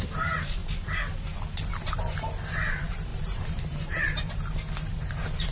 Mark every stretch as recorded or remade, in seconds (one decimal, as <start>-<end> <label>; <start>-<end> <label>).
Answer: 0.0-0.6 remade; 0.6-2.7 recorded; 2.7-5.5 remade